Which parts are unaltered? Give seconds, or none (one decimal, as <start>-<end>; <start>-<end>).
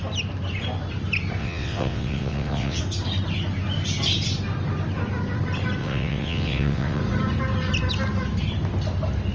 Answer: 0.0-1.4; 2.8-5.8; 7.0-9.3